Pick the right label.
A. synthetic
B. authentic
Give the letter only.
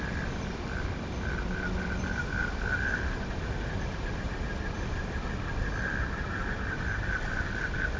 B